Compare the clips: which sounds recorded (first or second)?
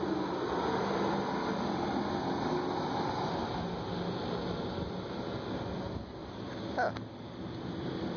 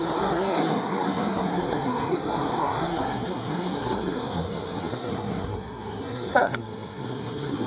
first